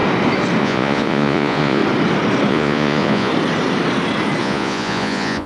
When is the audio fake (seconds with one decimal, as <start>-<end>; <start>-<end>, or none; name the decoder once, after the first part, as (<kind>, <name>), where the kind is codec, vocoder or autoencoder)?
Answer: 0.6-1.8 (vocoder, Vocos); 2.5-3.3; 4.4-5.5